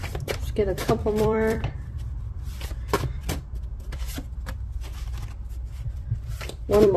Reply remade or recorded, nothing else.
remade